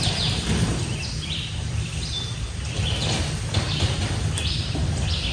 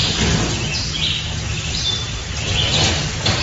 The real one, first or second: second